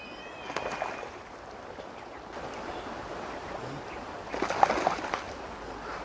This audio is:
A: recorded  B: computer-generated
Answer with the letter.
A